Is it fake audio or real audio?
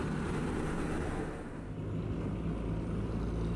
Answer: real